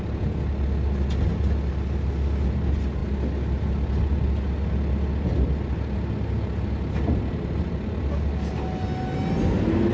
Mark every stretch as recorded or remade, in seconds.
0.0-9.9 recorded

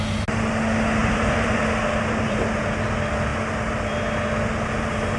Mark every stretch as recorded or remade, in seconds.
0.0-1.0 recorded; 1.0-1.6 remade; 1.6-5.2 recorded

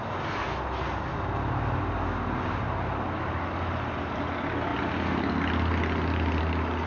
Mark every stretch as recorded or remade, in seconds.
0.0-6.9 recorded

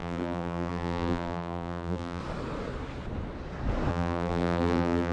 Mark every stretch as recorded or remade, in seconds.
0.0-2.2 remade; 2.2-3.9 recorded; 3.9-5.1 remade

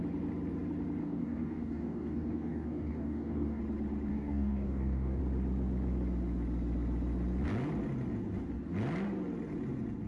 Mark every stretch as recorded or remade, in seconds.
0.0-1.0 recorded; 1.0-3.6 remade; 3.6-4.1 recorded; 4.1-5.2 remade; 5.2-10.1 recorded